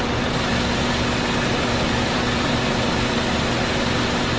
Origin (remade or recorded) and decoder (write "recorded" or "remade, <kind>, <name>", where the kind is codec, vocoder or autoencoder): recorded